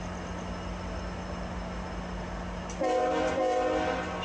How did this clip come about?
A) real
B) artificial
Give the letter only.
A